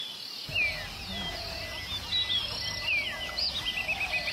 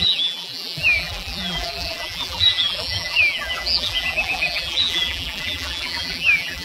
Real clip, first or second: first